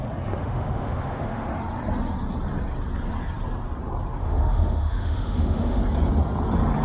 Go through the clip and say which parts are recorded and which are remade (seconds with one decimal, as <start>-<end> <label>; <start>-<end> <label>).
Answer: 0.0-0.4 recorded; 0.4-1.5 remade; 1.5-4.2 recorded; 4.2-5.8 remade; 5.8-6.8 recorded